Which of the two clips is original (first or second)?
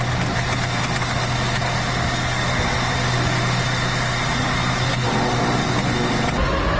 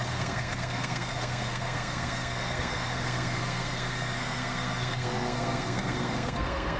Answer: first